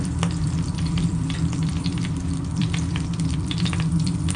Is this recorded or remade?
remade